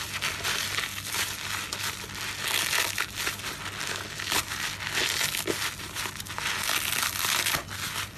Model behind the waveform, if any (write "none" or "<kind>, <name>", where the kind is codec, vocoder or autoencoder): none